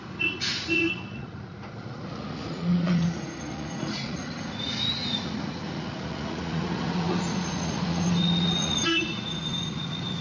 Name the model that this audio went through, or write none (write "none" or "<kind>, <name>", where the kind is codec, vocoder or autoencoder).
vocoder, Vocos